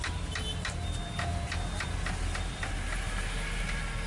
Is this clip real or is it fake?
real